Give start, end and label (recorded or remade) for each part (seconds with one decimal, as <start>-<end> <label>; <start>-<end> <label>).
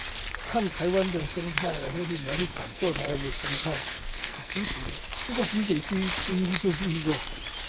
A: 0.0-1.2 recorded; 1.2-5.8 remade; 5.8-6.3 recorded; 6.3-7.1 remade; 7.1-7.7 recorded